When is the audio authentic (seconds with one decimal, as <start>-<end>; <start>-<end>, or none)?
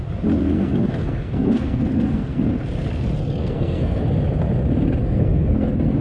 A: 0.0-0.4; 2.5-3.4; 4.0-5.0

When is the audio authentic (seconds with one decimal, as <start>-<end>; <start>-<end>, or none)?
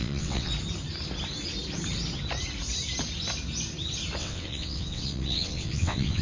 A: 0.5-4.2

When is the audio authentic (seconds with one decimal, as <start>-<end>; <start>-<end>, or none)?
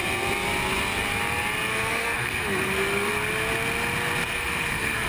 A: 0.0-1.7; 3.1-4.2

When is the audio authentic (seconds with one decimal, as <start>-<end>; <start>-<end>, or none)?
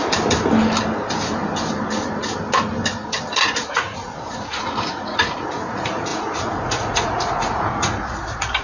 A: 0.0-3.4